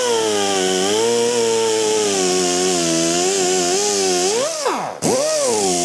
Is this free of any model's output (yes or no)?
yes